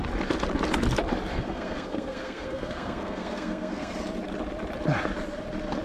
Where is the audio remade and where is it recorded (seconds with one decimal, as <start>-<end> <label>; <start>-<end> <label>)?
0.0-1.3 recorded; 1.3-4.0 remade; 4.0-5.8 recorded